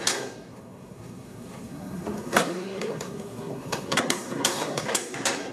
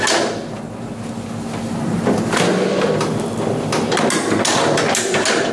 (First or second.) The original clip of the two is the second